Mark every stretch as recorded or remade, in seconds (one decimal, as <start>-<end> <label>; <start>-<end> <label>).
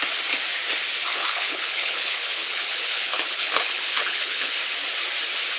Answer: 0.0-1.1 recorded; 1.1-4.5 remade; 4.5-5.6 recorded